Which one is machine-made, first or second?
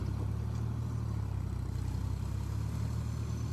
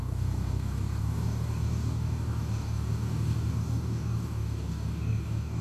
second